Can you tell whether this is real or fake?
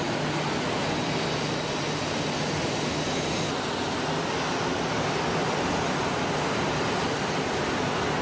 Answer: real